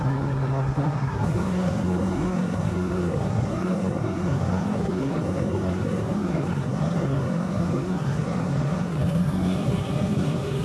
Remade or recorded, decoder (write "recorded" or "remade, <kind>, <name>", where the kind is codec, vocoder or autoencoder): remade, codec, SNAC